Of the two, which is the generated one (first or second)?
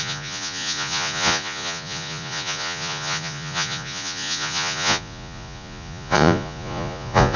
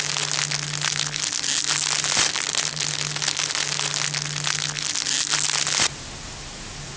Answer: first